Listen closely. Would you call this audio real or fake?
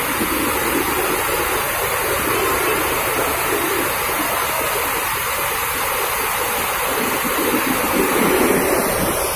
real